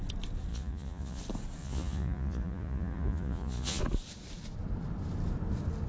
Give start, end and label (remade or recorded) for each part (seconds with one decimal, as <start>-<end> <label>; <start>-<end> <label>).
0.0-0.5 recorded; 0.5-1.2 remade; 1.2-1.6 recorded; 1.6-3.8 remade; 3.8-5.9 recorded